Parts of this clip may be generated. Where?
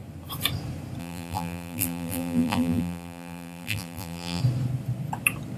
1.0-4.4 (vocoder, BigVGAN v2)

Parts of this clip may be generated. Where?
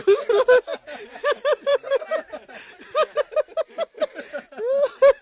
none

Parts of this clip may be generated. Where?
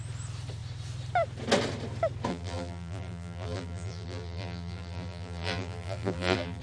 2.3-6.6 (vocoder, BigVGAN v2)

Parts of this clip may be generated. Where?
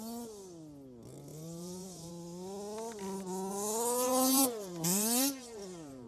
1.3-2.1 (vocoder, BigVGAN v2); 3.5-6.1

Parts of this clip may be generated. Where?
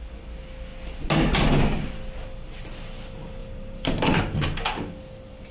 3.4-4.2 (vocoder, BigVGAN v2)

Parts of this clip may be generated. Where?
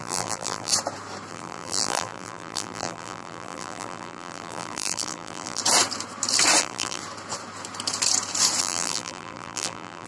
0.0-0.7 (vocoder, BigVGAN v2); 1.3-5.6; 6.6-7.0; 8.6-10.1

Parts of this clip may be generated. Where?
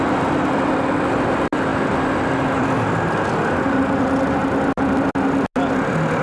none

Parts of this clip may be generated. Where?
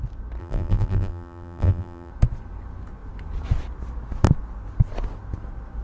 0.4-2.1 (vocoder, BigVGAN v2)